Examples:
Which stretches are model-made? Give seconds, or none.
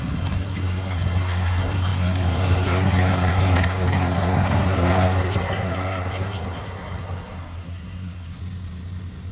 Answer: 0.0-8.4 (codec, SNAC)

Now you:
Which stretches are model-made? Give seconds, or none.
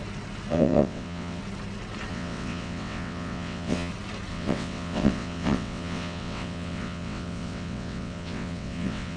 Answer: 0.5-1.4 (vocoder, WaveNeXt); 2.1-3.9; 4.3-9.2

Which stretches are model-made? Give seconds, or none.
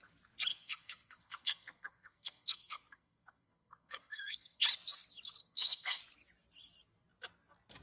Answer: 0.5-4.6 (codec, SNAC); 5.4-6.0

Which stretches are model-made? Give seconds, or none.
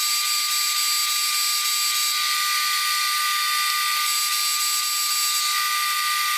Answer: none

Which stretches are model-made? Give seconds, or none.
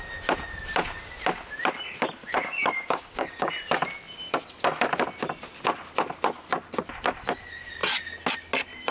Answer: 2.2-3.5 (codec, DAC)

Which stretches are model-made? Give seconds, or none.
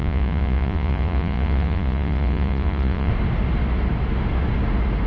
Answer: 0.0-3.1 (vocoder, Vocos)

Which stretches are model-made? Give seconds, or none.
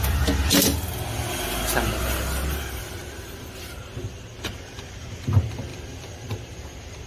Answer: 2.8-3.4 (vocoder, BigVGAN v2); 5.7-7.1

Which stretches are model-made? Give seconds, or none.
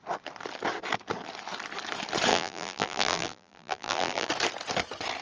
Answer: 2.3-4.3 (vocoder, BigVGAN v2)